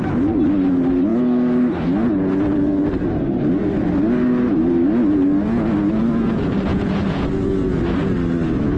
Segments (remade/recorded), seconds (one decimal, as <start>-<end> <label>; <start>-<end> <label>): 0.0-6.7 recorded; 6.7-7.3 remade; 7.3-8.8 recorded